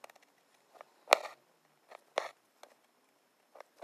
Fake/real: real